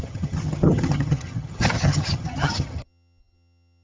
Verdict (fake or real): fake